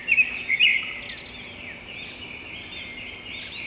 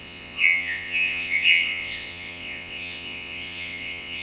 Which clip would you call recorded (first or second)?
first